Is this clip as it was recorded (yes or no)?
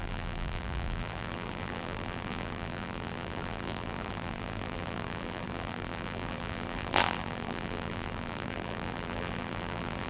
no